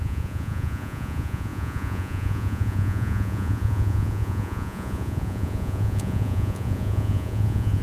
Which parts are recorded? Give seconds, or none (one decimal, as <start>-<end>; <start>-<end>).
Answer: none